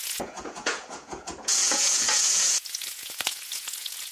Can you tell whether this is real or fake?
fake